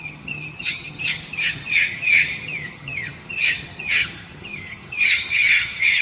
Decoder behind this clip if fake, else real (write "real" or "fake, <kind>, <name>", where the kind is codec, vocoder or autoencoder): fake, vocoder, HiFi-GAN